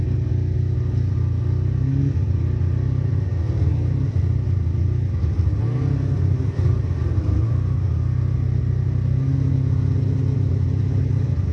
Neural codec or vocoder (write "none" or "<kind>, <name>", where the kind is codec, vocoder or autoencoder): none